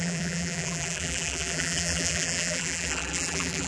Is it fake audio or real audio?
fake